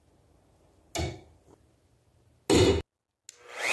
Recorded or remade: recorded